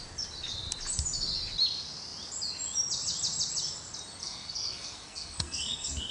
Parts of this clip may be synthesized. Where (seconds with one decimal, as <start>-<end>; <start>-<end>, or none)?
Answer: 4.2-6.1